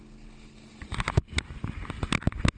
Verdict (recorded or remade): recorded